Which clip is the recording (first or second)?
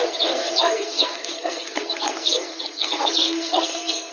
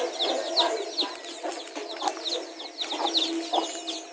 second